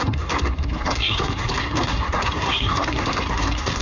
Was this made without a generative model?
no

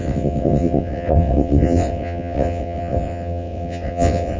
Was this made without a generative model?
no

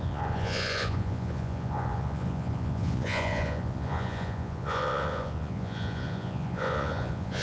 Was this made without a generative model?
no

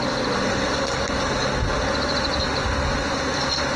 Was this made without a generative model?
yes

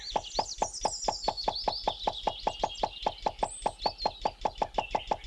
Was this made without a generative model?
yes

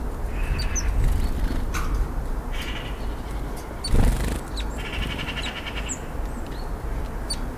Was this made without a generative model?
yes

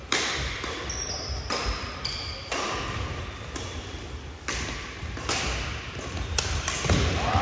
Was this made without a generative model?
yes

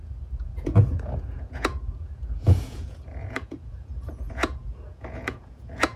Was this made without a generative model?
no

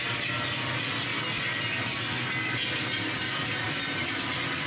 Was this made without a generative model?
yes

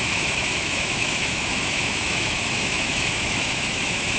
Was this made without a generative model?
no